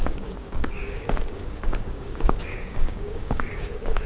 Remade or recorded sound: remade